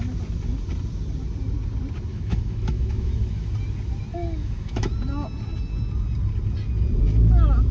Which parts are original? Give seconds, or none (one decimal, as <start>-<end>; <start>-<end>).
0.0-2.1; 3.5-4.1; 4.9-7.7